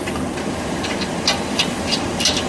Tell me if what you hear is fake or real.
real